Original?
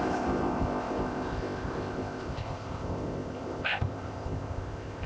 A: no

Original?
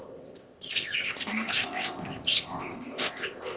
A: no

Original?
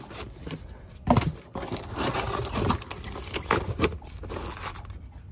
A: yes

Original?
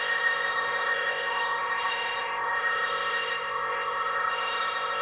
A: no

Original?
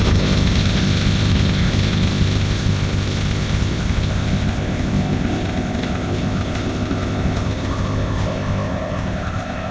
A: no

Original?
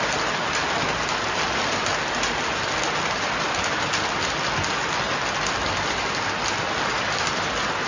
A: yes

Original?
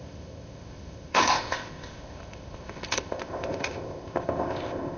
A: no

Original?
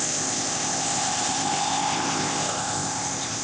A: no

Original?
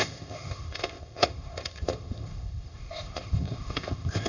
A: no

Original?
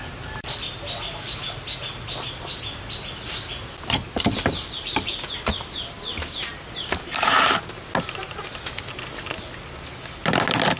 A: yes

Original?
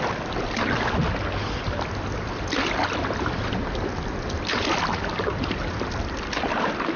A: yes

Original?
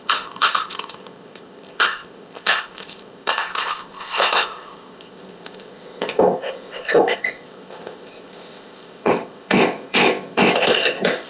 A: no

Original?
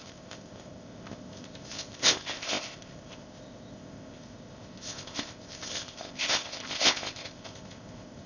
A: no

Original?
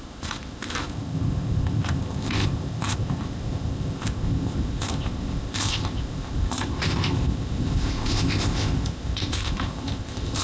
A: no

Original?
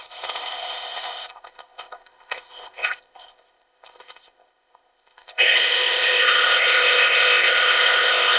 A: no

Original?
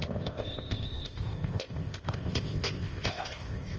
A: no